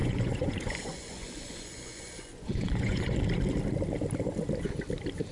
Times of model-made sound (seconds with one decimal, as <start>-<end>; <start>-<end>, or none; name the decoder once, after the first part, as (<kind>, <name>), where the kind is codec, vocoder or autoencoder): 0.0-3.2 (vocoder, Vocos)